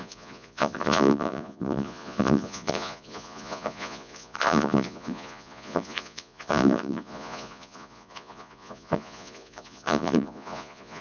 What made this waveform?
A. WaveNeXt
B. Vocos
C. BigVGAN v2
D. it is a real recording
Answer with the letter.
B